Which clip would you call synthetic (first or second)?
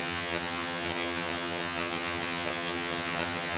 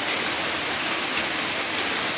first